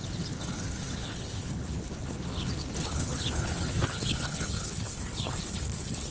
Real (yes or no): no